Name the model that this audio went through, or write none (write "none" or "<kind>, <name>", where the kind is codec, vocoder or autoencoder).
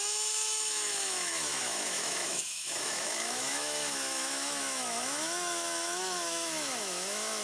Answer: autoencoder, DAC-VAE